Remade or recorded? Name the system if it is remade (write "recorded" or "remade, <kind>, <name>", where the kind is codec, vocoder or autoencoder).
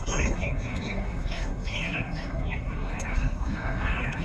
remade, codec, SNAC